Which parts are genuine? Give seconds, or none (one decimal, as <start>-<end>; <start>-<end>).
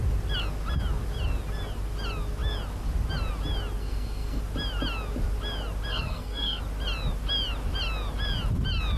0.0-3.8; 4.4-5.9; 6.6-9.0